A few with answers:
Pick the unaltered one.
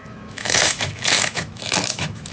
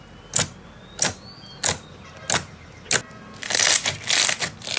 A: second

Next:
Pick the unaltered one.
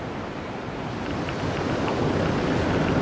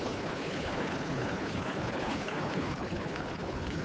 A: first